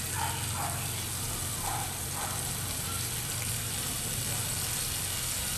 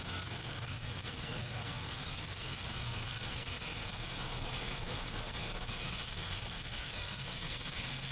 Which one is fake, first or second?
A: second